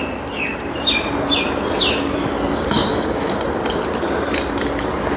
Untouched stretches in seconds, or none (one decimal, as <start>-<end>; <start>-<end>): 0.0-2.9; 3.4-5.2